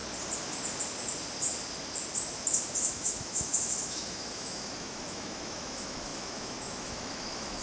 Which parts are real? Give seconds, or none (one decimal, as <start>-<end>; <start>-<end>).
0.0-2.9